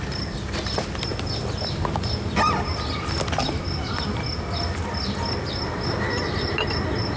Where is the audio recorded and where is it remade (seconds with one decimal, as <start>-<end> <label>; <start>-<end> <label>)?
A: 0.0-7.2 recorded